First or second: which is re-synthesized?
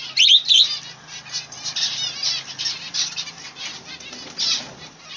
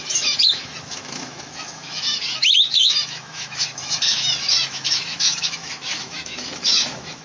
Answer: second